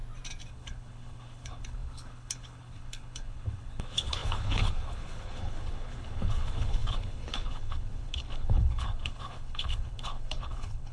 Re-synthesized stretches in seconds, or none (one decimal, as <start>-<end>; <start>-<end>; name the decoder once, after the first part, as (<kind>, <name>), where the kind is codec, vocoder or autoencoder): 0.5-10.9 (codec, HILCodec)